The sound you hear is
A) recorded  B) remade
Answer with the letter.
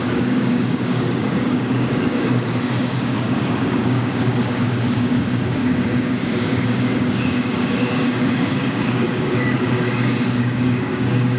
B